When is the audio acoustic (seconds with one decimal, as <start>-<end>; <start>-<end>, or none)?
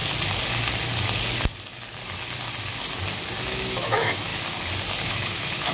0.0-3.4; 4.3-5.1